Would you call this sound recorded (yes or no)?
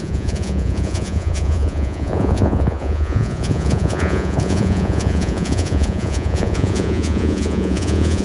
no